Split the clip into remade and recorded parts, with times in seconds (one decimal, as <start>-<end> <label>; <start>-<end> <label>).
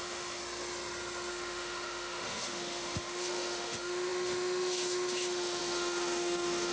0.0-0.4 remade; 0.4-1.3 recorded; 1.3-6.7 remade